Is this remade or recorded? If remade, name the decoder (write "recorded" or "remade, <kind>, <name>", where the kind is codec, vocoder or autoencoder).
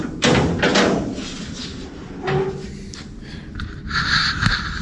recorded